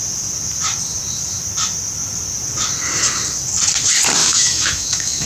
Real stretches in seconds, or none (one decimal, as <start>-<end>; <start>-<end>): 0.0-4.2